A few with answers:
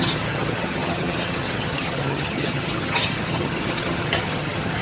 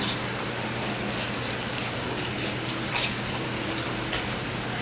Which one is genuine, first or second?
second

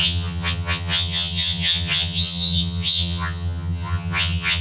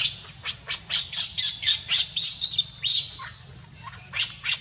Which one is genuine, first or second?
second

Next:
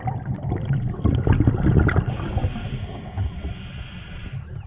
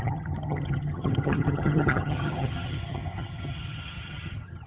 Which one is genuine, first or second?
first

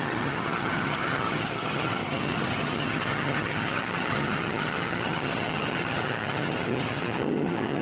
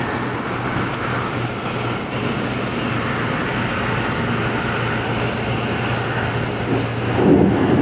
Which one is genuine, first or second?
second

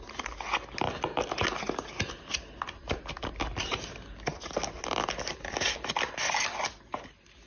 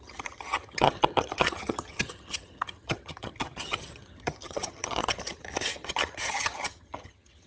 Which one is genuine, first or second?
first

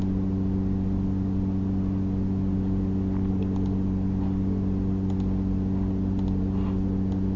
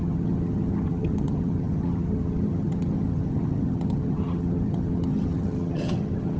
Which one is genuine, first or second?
first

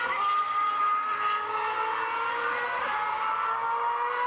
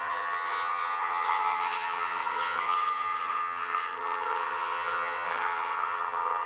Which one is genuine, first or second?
first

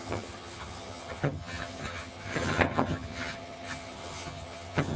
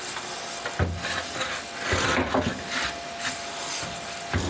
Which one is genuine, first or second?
second